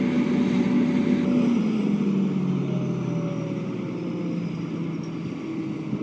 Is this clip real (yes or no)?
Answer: yes